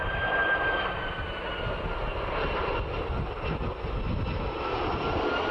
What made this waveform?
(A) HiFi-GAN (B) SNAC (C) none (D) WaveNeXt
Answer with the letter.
C